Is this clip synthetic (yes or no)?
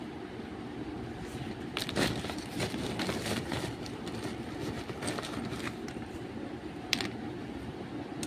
no